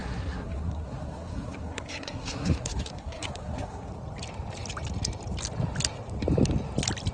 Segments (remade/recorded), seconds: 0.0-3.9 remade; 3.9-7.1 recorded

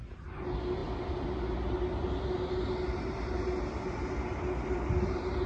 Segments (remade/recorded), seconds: 0.0-5.5 recorded

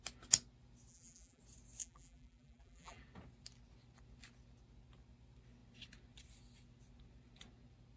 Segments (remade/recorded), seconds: 0.0-0.9 recorded; 0.9-1.4 remade; 1.4-1.8 recorded; 1.8-3.0 remade; 3.0-8.0 recorded

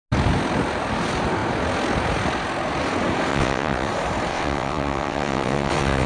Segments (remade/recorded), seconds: 0.0-3.3 recorded; 3.3-3.9 remade; 3.9-4.3 recorded; 4.3-6.1 remade

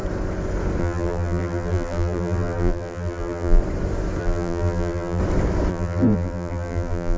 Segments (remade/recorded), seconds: 0.0-0.8 recorded; 0.8-3.6 remade; 3.6-4.2 recorded; 4.2-5.2 remade; 5.2-5.7 recorded; 5.7-7.2 remade

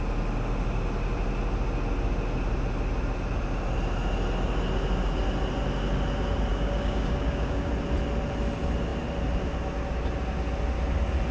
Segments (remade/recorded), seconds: 0.0-6.5 recorded; 6.5-7.7 remade; 7.7-11.3 recorded

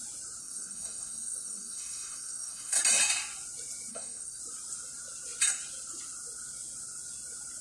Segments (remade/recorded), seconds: 0.0-0.4 recorded; 0.4-2.8 remade; 2.8-3.9 recorded; 3.9-4.4 remade; 4.4-7.6 recorded

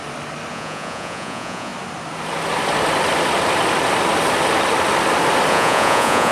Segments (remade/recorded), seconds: 0.0-0.5 recorded; 0.5-1.7 remade; 1.7-5.5 recorded; 5.5-6.3 remade